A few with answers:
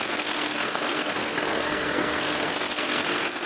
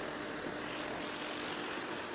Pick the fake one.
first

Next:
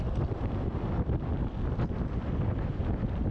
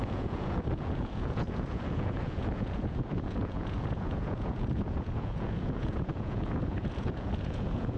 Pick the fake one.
second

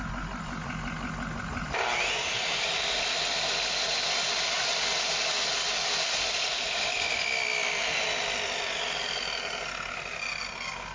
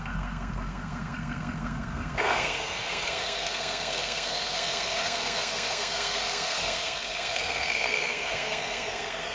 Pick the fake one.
second